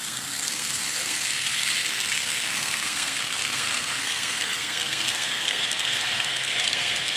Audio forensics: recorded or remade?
remade